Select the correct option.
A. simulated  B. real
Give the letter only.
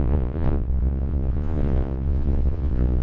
A